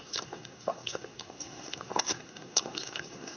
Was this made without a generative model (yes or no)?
no